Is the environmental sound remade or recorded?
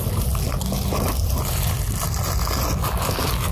recorded